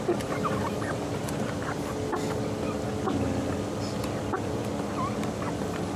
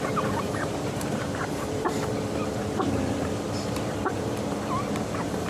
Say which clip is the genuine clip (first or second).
first